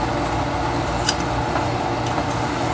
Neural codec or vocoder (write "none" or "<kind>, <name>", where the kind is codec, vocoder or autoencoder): none